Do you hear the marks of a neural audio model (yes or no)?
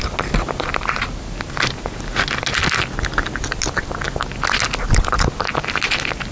no